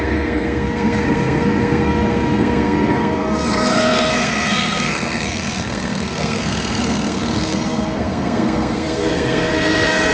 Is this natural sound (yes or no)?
no